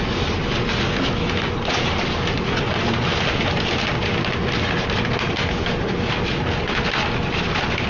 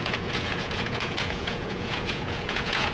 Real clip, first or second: first